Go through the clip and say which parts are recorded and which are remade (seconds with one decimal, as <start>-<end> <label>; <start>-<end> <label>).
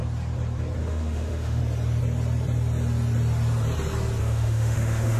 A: 0.0-0.8 recorded; 0.8-1.6 remade; 1.6-4.2 recorded; 4.2-5.2 remade